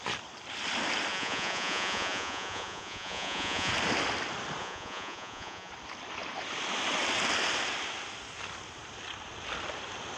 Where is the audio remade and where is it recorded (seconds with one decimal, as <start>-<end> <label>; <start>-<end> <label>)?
0.0-1.1 recorded; 1.1-3.7 remade; 3.7-4.6 recorded; 4.6-5.7 remade; 5.7-10.2 recorded